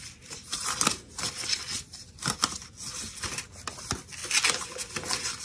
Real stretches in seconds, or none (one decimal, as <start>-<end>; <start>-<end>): 0.0-5.4